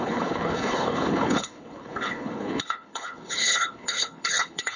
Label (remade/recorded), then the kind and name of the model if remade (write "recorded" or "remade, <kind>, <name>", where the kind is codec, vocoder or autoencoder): remade, codec, HILCodec